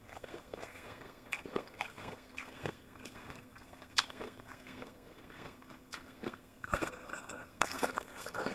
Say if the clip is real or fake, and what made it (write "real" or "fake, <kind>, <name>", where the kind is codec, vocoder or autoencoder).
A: fake, codec, SNAC